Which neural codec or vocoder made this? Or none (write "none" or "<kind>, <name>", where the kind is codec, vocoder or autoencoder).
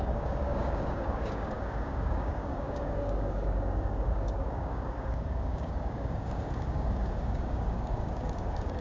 codec, DAC